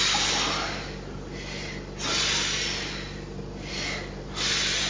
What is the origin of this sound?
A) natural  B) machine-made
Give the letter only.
A